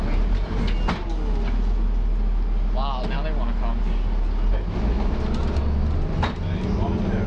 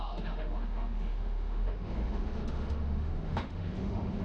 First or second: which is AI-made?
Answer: second